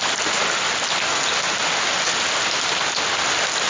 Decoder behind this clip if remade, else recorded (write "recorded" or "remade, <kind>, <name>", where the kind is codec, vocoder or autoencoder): recorded